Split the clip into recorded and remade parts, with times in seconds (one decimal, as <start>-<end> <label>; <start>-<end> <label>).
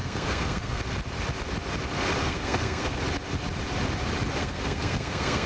0.0-0.8 remade; 0.8-2.2 recorded; 2.2-3.0 remade; 3.0-4.4 recorded; 4.4-5.5 remade